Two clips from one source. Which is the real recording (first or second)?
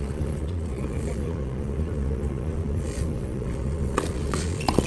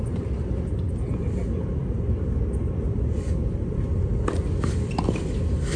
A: second